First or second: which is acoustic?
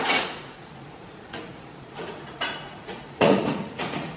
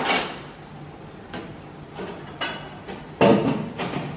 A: second